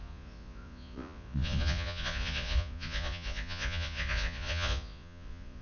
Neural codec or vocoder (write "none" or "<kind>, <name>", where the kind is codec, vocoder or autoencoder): vocoder, Vocos